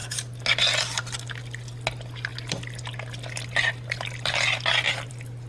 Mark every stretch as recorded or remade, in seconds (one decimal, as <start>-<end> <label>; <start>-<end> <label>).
0.0-2.3 recorded; 2.3-5.1 remade; 5.1-5.5 recorded